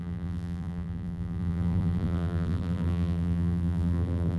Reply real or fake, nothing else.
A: fake